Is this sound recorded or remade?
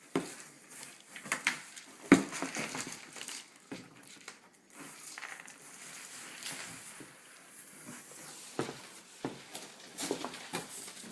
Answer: remade